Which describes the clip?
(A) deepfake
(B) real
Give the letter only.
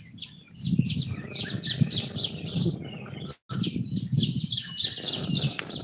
B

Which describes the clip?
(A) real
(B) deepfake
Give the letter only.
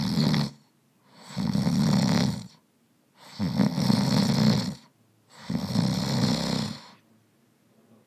A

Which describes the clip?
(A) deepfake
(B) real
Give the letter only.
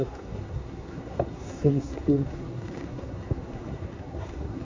A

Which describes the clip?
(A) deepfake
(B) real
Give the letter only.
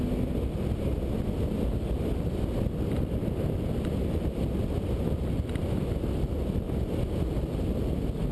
B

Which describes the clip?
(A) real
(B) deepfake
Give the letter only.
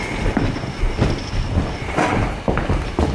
A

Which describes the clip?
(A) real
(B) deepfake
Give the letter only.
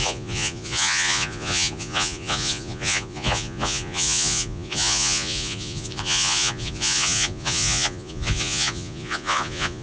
B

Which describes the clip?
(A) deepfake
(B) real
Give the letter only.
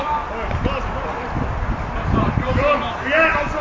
B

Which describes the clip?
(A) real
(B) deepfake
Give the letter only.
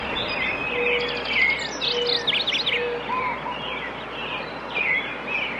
A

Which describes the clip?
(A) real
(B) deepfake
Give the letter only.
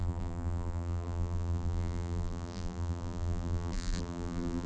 B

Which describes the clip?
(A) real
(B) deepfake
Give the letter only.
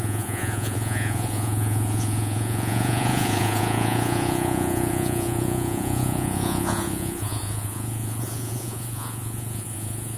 B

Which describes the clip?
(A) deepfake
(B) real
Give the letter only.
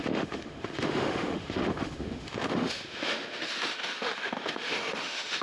A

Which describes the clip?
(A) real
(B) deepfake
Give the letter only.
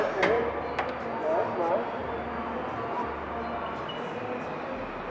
A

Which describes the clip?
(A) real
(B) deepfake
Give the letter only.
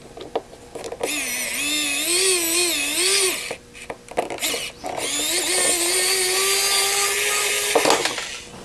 A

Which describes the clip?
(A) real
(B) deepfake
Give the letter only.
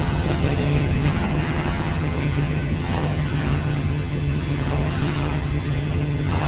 B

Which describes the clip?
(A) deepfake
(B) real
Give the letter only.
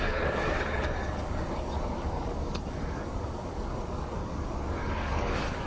A